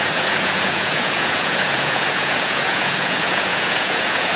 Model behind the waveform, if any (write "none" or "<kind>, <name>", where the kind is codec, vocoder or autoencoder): vocoder, Vocos